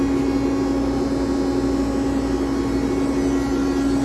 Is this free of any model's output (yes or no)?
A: yes